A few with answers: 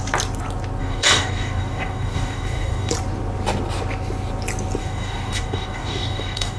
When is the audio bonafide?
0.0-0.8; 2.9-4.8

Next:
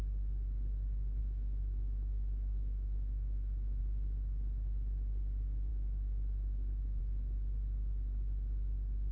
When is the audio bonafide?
0.0-1.2; 3.8-5.7; 7.0-9.1